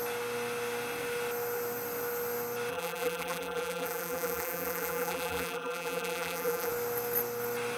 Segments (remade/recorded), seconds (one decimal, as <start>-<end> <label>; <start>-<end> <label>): 0.0-2.7 recorded; 2.7-6.7 remade; 6.7-7.8 recorded